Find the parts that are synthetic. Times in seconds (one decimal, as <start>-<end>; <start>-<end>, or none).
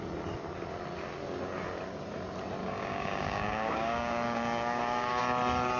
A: 2.6-5.2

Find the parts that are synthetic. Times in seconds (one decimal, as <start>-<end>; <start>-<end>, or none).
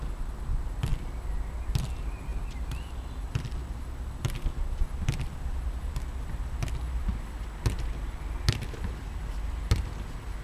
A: none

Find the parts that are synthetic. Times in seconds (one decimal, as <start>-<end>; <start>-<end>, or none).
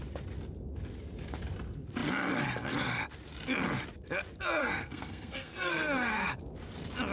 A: 4.6-6.3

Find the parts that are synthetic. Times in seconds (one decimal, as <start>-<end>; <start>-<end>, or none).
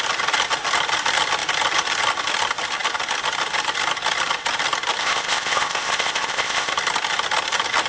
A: 5.0-6.7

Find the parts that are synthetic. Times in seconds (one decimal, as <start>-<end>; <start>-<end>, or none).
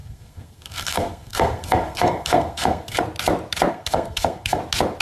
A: 0.0-3.0; 3.7-4.6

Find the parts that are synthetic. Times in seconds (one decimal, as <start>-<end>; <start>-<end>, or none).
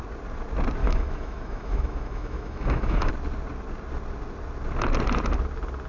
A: 0.8-3.1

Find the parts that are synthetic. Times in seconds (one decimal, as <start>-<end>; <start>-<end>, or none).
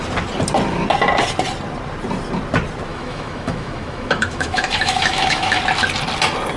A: 2.9-5.6